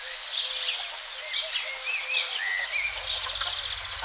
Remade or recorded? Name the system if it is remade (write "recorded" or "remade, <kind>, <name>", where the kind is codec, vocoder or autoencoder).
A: recorded